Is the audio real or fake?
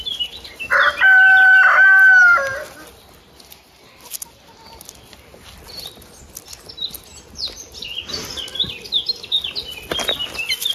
real